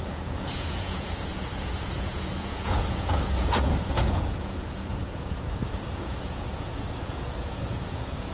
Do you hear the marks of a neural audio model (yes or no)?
yes